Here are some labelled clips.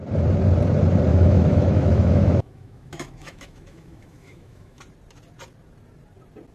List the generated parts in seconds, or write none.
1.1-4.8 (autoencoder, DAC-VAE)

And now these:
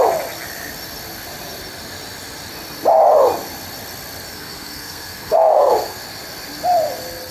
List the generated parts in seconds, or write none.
4.3-6.0 (codec, SNAC)

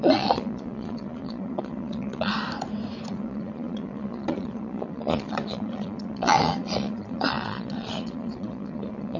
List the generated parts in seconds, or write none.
0.0-2.3 (vocoder, Vocos); 3.1-9.2